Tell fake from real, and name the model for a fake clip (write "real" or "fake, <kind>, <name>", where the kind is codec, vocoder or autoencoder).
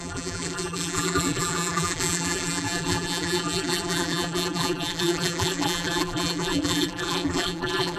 fake, vocoder, BigVGAN v2